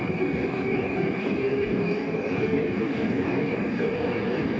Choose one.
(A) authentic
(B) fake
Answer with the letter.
B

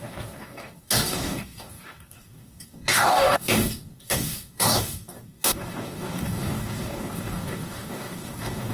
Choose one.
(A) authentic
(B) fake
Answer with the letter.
B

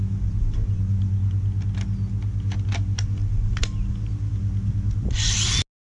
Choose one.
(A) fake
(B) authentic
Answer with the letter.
B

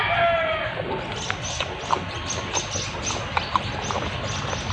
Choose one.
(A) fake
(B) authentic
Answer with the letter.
B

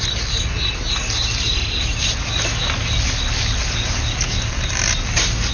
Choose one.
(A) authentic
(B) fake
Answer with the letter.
A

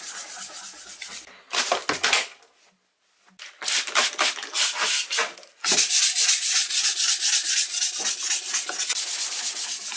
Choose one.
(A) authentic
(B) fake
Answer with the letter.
A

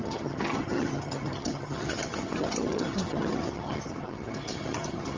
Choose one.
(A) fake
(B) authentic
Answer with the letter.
A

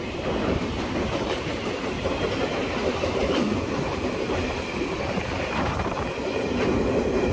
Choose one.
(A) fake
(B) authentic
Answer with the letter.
A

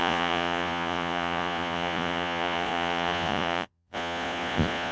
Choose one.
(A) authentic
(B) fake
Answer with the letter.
B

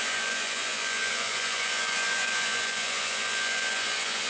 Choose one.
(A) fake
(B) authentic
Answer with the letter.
A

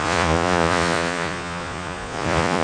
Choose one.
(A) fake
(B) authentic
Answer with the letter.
A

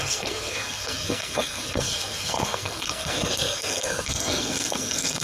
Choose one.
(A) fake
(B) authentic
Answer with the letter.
A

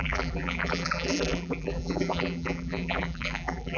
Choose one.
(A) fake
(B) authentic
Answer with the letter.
A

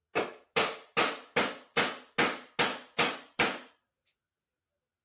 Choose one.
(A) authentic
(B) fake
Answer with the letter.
A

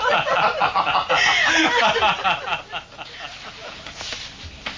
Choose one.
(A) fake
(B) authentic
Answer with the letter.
B